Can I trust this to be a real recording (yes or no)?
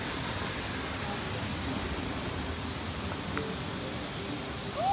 yes